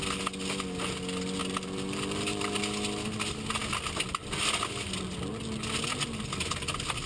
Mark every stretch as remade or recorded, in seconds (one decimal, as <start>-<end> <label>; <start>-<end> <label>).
0.0-1.4 recorded; 1.4-2.6 remade; 2.6-7.1 recorded